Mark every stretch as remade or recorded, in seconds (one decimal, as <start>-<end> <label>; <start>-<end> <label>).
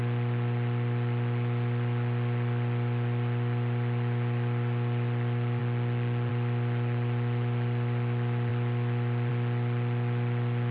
0.0-10.7 recorded